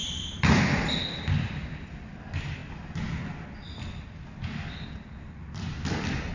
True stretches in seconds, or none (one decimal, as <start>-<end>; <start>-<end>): 0.0-6.3